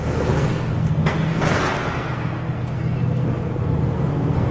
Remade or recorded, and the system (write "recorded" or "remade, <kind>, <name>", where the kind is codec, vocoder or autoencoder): remade, codec, SNAC